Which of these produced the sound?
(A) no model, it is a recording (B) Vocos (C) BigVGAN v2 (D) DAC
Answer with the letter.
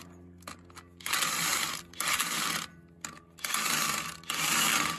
A